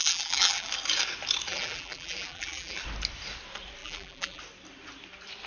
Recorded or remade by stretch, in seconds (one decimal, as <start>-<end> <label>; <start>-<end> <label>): 0.0-0.7 remade; 0.7-1.5 recorded; 1.5-2.8 remade; 2.8-3.8 recorded; 3.8-4.4 remade; 4.4-5.5 recorded